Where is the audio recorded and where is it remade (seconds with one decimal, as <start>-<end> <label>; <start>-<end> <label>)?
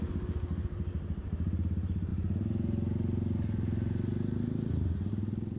0.0-5.6 recorded